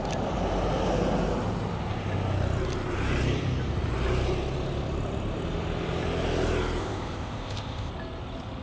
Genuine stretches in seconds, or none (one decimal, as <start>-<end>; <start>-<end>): 0.0-6.8; 7.9-8.6